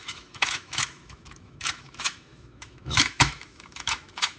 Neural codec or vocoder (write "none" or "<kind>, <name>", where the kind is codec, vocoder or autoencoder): autoencoder, DAC-VAE